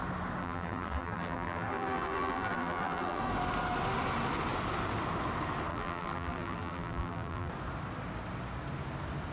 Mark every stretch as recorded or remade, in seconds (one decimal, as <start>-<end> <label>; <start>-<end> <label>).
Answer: 0.0-0.4 recorded; 0.4-3.2 remade; 3.2-5.7 recorded; 5.7-7.5 remade; 7.5-9.3 recorded